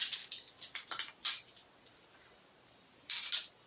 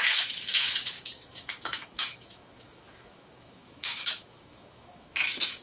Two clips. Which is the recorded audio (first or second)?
first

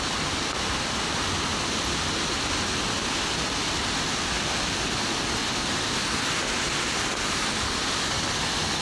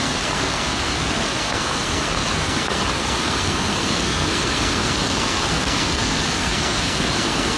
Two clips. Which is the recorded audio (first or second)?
first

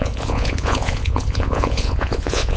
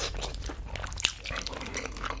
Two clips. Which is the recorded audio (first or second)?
second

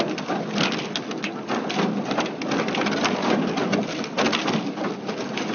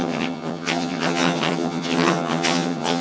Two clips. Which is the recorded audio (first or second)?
first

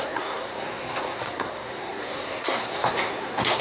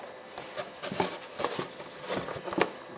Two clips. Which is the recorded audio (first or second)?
second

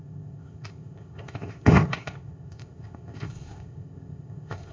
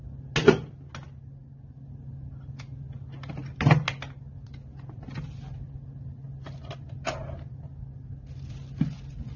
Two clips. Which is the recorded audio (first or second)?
second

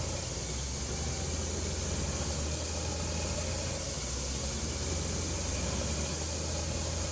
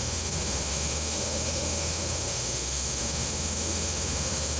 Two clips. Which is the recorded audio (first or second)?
first